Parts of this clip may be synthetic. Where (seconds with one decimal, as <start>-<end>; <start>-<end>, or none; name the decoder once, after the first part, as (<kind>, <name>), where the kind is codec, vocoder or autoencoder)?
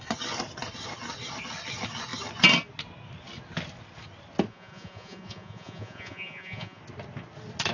4.5-6.8 (vocoder, Vocos)